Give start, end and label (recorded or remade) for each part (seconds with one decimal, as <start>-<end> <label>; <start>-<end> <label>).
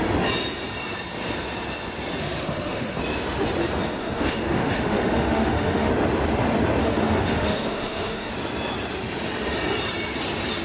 0.0-2.2 recorded; 2.2-3.0 remade; 3.0-4.0 recorded; 4.0-5.9 remade; 5.9-6.8 recorded; 6.8-8.3 remade; 8.3-10.6 recorded